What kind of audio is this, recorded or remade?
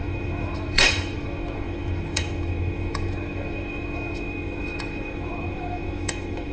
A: remade